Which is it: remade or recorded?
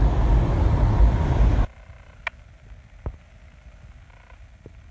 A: recorded